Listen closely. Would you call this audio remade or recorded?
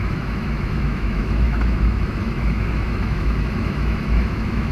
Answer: remade